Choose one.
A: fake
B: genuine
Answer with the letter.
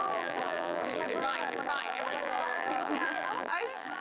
A